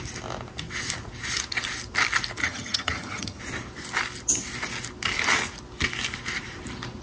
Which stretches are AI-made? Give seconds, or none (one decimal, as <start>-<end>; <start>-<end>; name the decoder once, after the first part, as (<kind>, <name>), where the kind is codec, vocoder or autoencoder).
2.4-3.4 (vocoder, HiFi-GAN)